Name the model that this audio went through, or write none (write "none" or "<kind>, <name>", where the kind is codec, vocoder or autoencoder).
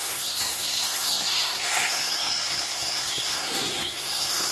codec, SNAC